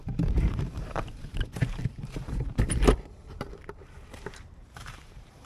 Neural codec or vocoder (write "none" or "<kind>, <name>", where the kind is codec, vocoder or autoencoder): vocoder, BigVGAN v2